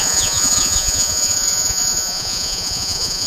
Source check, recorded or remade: remade